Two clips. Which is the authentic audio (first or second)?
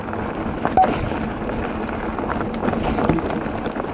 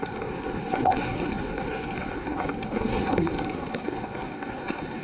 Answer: first